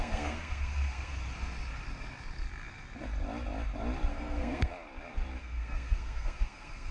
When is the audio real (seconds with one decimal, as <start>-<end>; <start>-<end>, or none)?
1.1-4.1; 4.7-5.4